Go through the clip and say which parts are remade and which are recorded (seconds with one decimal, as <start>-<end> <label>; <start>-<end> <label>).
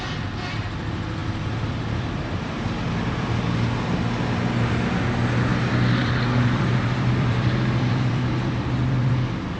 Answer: 0.0-1.2 recorded; 1.2-2.5 remade; 2.5-5.5 recorded; 5.5-9.1 remade; 9.1-9.6 recorded